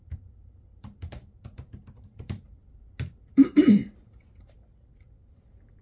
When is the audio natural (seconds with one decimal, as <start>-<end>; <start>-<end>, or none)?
2.6-3.2